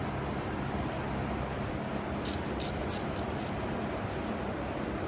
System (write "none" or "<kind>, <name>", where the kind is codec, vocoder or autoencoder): none